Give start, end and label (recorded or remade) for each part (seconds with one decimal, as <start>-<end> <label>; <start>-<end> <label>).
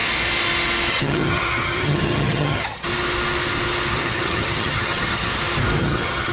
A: 0.0-0.9 recorded; 0.9-2.9 remade; 2.9-3.9 recorded; 3.9-5.3 remade; 5.3-5.8 recorded; 5.8-6.3 remade